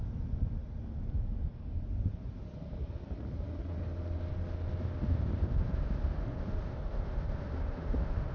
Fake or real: real